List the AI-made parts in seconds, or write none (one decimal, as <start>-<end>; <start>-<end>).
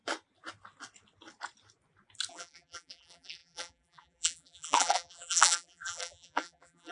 2.3-6.9